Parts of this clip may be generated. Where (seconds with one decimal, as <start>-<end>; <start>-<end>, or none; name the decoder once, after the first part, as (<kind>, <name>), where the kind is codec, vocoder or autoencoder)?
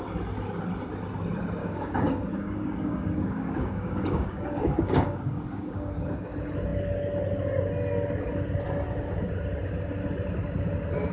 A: 1.6-6.3 (codec, DAC)